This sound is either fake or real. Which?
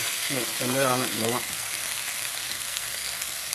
fake